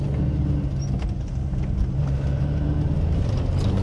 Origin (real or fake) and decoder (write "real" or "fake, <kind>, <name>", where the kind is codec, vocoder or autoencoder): real